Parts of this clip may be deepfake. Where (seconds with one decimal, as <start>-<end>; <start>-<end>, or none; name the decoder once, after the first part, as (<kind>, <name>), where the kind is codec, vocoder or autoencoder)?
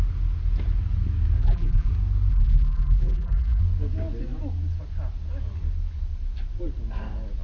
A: 1.4-1.9 (vocoder, BigVGAN v2); 2.3-3.6